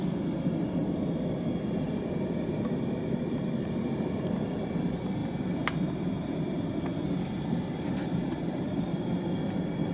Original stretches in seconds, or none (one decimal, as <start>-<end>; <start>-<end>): 0.0-9.9